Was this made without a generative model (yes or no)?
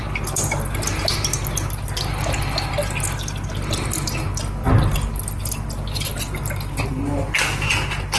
yes